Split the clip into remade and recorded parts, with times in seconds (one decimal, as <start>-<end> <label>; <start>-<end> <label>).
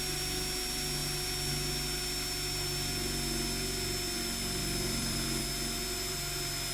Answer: 0.0-4.6 recorded; 4.6-5.4 remade; 5.4-6.7 recorded